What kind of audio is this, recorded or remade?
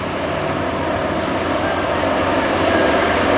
recorded